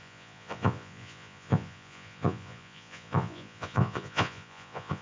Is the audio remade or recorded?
remade